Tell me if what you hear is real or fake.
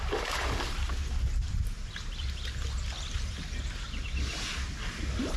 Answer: real